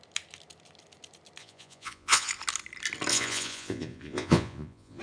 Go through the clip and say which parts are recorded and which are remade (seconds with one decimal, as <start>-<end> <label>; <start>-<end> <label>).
0.0-1.4 recorded; 1.4-2.3 remade; 2.3-3.1 recorded; 3.1-5.0 remade